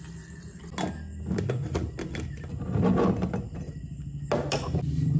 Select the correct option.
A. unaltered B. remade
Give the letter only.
A